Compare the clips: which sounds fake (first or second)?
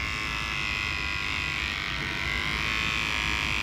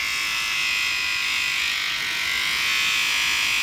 second